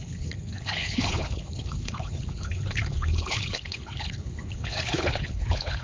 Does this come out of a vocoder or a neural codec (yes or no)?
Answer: yes